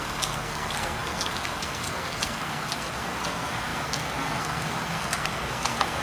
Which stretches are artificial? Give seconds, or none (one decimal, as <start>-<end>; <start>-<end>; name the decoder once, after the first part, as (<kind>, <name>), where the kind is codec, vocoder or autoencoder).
0.0-6.0 (codec, SNAC)